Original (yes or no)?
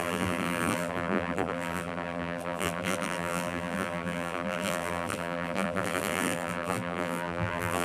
no